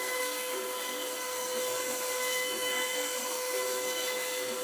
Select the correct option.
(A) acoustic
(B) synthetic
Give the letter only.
B